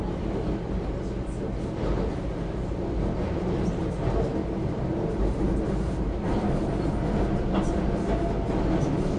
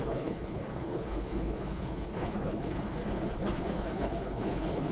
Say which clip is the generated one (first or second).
second